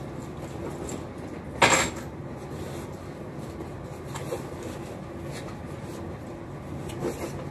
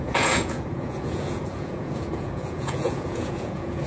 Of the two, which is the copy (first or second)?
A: second